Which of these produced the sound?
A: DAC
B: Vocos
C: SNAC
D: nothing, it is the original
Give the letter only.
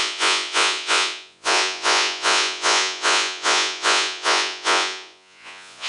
B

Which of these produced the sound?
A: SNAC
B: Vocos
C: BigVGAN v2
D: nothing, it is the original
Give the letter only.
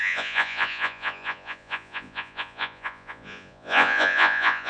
B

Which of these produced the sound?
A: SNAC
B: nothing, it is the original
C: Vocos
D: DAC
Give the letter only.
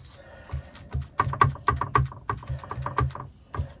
B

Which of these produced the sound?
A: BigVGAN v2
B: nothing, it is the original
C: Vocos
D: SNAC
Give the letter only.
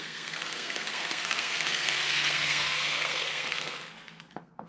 D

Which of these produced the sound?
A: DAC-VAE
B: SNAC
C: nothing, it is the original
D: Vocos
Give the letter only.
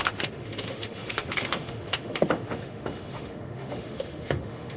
A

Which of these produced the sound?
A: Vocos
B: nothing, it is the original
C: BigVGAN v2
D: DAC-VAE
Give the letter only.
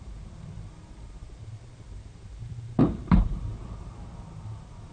C